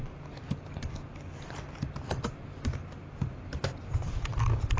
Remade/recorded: recorded